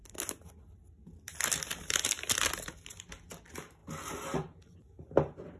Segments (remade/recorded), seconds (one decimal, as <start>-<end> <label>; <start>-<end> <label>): 0.0-5.6 recorded